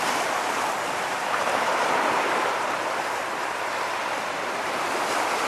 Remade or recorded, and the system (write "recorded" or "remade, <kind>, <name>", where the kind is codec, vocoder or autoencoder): remade, vocoder, BigVGAN v2